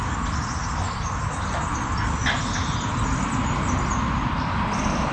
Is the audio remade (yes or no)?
no